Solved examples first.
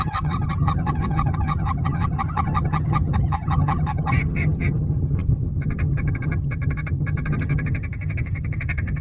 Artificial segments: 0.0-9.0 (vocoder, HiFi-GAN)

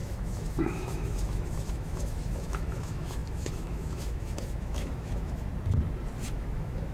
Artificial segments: 0.0-5.5 (autoencoder, DAC-VAE); 6.2-6.9

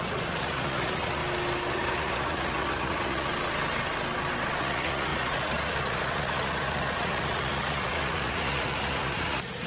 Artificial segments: 0.0-1.2 (vocoder, Vocos); 1.7-3.3; 4.6-9.7

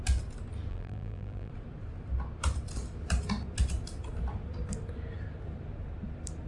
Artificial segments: 0.7-1.5 (vocoder, BigVGAN v2)

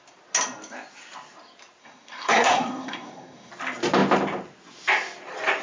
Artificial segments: 1.8-3.5 (codec, SNAC)

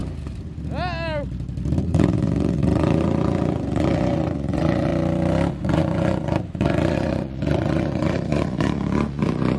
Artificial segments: 1.8-4.9 (vocoder, Vocos); 5.5-9.6

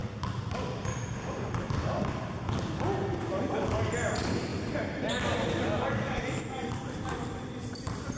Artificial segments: 4.5-5.1 (vocoder, BigVGAN v2); 6.8-8.2

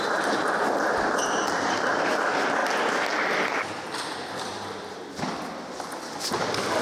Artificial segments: none